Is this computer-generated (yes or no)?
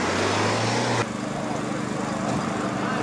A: no